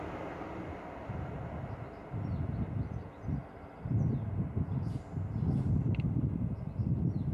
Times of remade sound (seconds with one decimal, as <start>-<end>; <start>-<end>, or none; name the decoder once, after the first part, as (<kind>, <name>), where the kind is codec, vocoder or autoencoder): none